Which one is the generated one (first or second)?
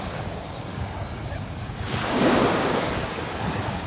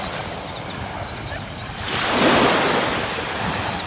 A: first